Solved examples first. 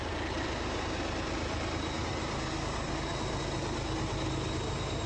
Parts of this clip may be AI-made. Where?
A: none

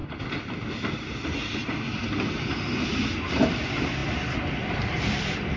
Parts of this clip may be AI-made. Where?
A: 3.4-4.0 (vocoder, BigVGAN v2); 4.7-5.6

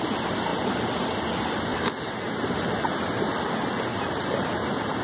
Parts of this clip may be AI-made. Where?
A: 0.5-1.2 (vocoder, BigVGAN v2); 1.7-5.0